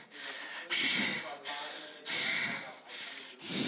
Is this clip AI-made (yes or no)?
no